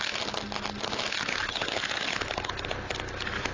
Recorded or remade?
recorded